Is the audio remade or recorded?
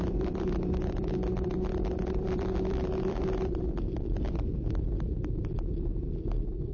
remade